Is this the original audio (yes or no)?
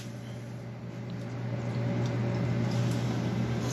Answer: yes